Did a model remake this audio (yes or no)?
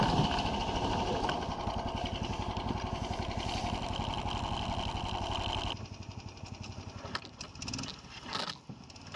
no